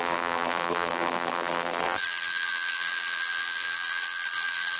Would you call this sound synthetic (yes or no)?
yes